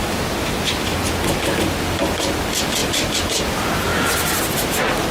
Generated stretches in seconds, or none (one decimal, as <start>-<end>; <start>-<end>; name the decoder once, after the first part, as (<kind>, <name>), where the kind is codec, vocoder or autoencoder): none